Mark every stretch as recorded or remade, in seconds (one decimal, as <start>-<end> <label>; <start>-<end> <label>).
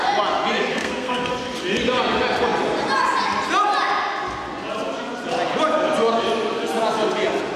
0.0-0.7 recorded; 0.7-1.3 remade; 1.3-7.6 recorded